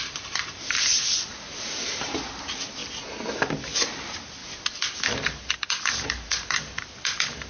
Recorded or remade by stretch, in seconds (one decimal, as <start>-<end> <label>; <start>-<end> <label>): 0.0-2.8 remade; 2.8-3.9 recorded; 3.9-4.4 remade; 4.4-5.8 recorded; 5.8-7.5 remade